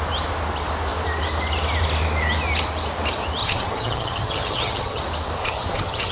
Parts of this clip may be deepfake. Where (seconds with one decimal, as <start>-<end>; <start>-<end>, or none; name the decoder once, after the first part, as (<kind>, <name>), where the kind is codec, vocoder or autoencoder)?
3.4-5.0 (vocoder, HiFi-GAN); 5.4-6.1